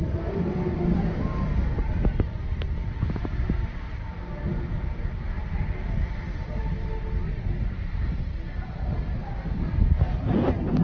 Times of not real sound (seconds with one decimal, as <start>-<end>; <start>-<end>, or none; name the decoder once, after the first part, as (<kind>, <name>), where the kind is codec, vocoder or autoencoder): none